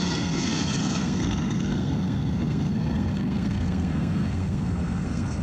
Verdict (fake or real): fake